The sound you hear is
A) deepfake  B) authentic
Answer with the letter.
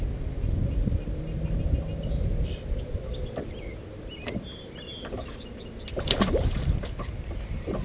B